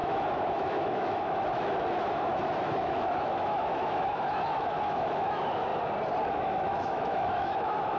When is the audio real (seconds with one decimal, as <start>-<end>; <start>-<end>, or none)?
5.7-6.3